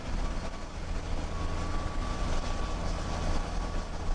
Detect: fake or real real